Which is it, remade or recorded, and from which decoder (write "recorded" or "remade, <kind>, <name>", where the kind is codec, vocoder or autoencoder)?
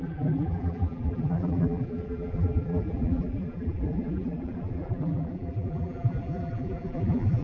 remade, vocoder, BigVGAN v2